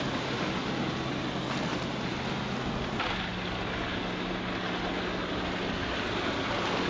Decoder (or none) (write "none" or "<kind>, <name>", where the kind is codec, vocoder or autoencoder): none